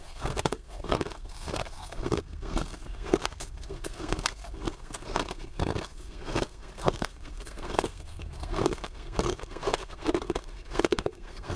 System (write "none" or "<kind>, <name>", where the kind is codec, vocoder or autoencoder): codec, SNAC